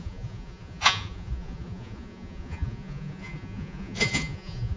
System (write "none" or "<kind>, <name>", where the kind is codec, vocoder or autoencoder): vocoder, Vocos